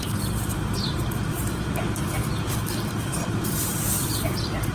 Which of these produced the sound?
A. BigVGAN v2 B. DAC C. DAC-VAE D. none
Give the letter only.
A